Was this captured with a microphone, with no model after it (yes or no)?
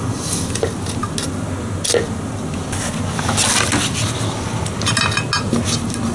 yes